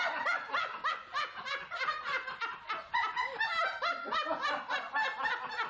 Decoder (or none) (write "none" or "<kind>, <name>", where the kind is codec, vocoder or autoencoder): none